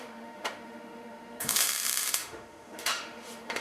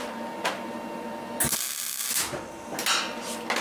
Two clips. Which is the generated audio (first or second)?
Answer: first